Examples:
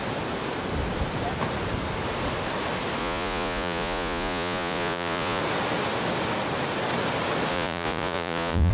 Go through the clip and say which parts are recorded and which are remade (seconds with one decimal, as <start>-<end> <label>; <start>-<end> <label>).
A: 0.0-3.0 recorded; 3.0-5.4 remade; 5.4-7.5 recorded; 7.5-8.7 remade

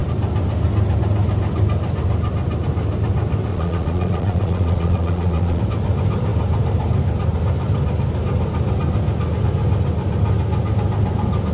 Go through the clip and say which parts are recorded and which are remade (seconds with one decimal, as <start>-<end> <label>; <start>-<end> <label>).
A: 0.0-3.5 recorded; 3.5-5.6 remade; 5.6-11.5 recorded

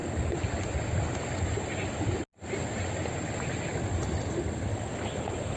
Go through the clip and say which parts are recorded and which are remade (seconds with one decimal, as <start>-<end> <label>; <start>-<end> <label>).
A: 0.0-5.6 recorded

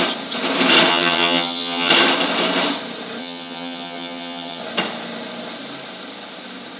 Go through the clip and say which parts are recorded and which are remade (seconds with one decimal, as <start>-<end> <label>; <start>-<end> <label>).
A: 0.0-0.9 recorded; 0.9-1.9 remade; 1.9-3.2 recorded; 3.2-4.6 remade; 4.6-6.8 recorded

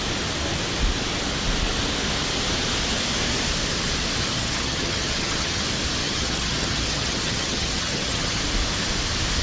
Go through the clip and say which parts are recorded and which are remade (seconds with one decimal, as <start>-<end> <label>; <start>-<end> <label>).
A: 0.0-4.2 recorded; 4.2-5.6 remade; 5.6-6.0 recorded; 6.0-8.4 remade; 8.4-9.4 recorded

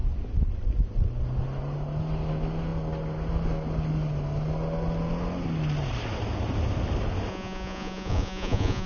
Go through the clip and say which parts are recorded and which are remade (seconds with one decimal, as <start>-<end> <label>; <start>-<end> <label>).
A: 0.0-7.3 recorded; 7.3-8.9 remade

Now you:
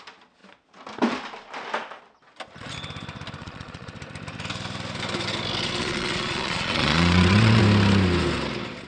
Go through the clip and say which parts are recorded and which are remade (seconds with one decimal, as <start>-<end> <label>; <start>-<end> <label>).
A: 0.0-3.4 recorded; 3.4-3.9 remade; 3.9-5.8 recorded; 5.8-7.6 remade; 7.6-8.9 recorded

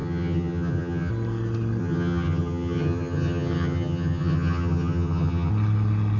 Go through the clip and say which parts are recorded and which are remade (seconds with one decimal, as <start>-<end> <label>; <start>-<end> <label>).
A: 0.0-1.1 remade; 1.1-1.8 recorded; 1.8-5.5 remade; 5.5-6.2 recorded